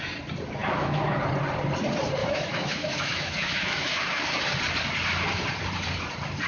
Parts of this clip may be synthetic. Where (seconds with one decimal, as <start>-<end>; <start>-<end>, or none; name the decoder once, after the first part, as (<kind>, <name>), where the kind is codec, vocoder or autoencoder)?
0.6-1.2 (autoencoder, DAC-VAE); 2.2-4.4

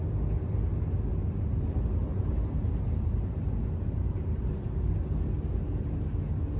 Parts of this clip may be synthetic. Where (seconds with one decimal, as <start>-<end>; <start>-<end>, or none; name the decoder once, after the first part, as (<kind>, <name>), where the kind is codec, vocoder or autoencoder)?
1.1-4.9 (vocoder, BigVGAN v2)

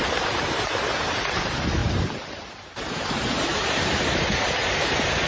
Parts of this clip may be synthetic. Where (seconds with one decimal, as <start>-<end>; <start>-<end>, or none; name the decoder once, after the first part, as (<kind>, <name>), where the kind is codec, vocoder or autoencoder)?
0.0-5.3 (vocoder, BigVGAN v2)